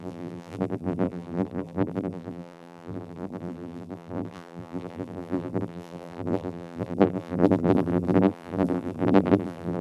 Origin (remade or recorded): remade